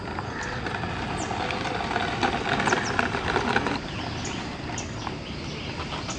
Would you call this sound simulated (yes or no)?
no